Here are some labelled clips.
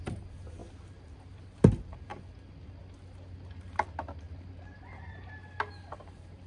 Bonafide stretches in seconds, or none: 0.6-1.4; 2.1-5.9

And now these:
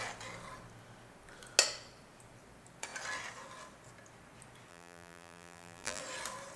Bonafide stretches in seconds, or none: 0.0-4.7; 6.0-6.6

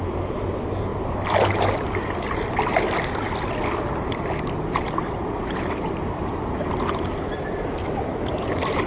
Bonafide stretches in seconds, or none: 0.0-8.9

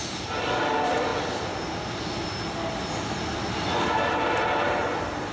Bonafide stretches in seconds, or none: 1.1-3.5